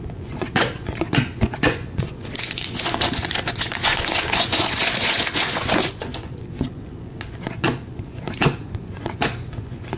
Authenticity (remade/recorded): remade